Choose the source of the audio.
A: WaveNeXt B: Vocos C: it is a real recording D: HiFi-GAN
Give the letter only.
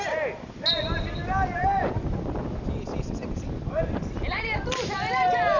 C